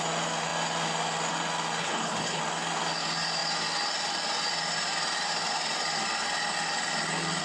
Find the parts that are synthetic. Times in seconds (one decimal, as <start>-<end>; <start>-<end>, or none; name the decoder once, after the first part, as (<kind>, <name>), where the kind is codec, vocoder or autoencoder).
1.8-2.4 (codec, HILCodec)